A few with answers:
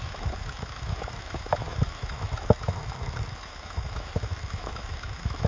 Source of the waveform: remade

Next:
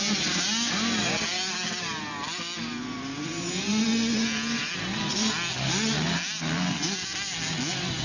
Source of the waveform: recorded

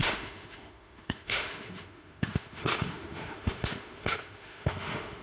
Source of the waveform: remade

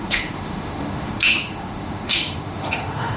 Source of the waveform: remade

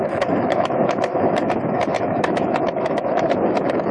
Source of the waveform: remade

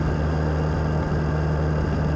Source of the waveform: recorded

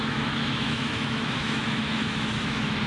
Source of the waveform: remade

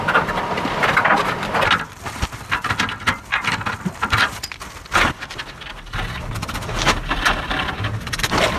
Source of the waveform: recorded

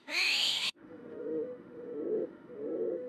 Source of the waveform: remade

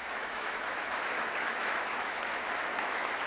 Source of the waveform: remade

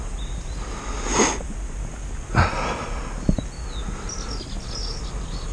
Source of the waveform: recorded